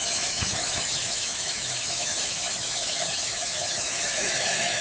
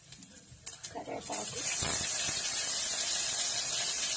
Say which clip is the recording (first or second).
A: second